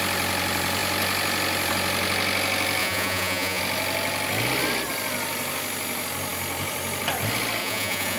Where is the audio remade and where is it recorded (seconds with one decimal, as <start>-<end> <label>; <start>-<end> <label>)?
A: 0.0-2.8 recorded; 2.8-3.6 remade; 3.6-7.6 recorded; 7.6-8.2 remade